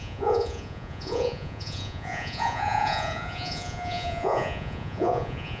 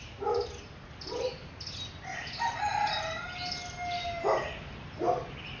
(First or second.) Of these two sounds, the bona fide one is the second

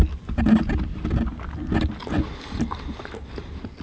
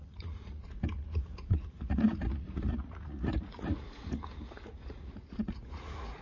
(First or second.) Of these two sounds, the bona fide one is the first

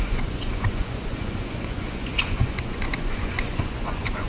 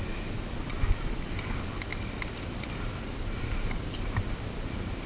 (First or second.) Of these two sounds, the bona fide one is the second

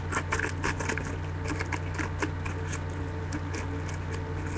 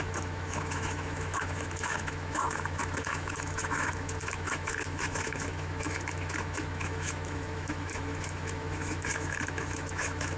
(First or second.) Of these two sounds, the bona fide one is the first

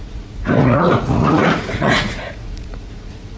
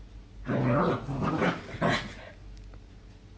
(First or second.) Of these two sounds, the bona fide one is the second